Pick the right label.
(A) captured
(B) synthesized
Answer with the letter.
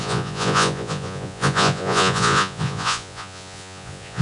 B